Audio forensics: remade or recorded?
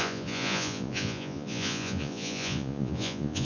remade